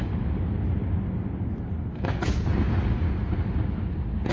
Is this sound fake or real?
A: real